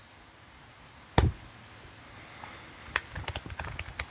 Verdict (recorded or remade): recorded